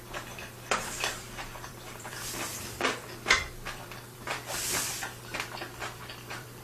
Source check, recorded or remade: remade